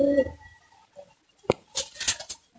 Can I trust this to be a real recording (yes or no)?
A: yes